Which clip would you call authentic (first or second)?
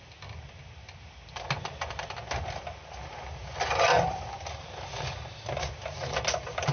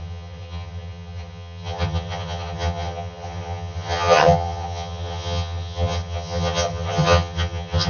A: first